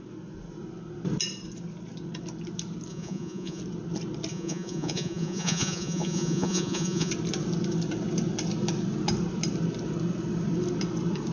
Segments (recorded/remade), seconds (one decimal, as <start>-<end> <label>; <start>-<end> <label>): 0.0-2.9 recorded; 2.9-3.6 remade; 3.6-4.3 recorded; 4.3-7.1 remade; 7.1-11.3 recorded